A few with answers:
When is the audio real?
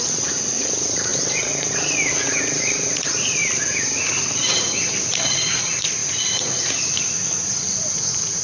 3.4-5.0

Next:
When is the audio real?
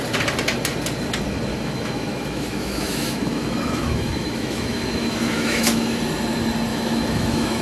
0.0-1.5; 6.0-6.7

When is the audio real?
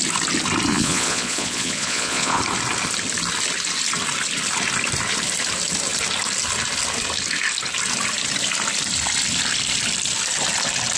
0.0-0.7; 2.4-11.0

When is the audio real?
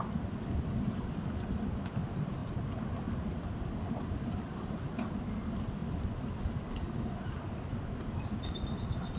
0.0-9.2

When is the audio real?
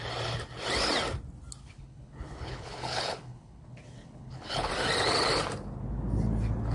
0.0-1.6; 4.7-6.7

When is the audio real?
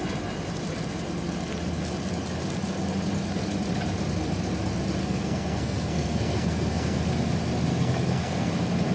0.0-5.0; 7.0-7.7; 8.5-8.9